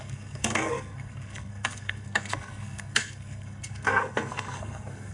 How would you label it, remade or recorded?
remade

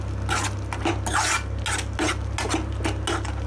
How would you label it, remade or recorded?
recorded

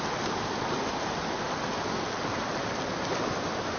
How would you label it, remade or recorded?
recorded